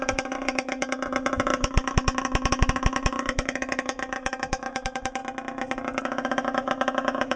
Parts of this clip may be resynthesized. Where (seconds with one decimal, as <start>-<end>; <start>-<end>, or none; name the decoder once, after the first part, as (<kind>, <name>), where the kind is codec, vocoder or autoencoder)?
0.0-5.2 (autoencoder, DAC-VAE); 6.0-7.4